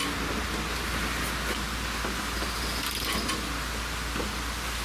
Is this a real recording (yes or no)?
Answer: yes